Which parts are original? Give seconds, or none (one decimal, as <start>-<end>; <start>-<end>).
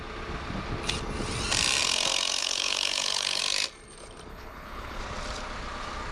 0.0-2.4; 3.4-4.3; 5.0-6.1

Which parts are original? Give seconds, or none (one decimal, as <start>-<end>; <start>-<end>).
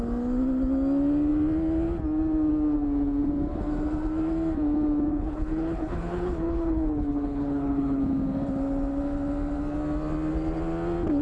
0.0-5.1; 8.0-11.2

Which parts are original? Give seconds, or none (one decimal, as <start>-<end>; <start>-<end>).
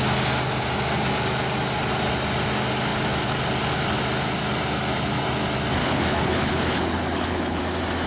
0.0-5.8; 7.6-8.1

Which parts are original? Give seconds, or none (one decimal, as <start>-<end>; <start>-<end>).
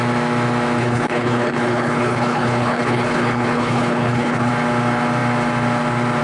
0.0-0.8; 4.5-6.2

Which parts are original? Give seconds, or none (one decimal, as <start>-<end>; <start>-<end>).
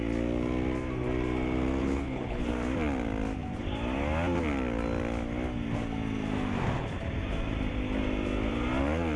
0.0-1.8; 2.5-9.2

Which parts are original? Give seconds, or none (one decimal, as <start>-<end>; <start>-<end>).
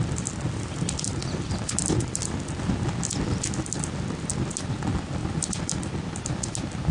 0.0-6.9